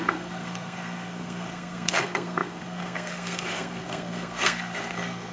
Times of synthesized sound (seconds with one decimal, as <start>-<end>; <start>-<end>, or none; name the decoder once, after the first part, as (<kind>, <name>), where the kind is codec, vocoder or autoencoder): 0.0-5.3 (codec, SNAC)